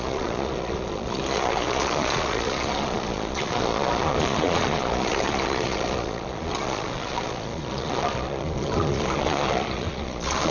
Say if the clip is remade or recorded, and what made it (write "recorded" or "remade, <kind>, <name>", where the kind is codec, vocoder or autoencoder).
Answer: remade, vocoder, Vocos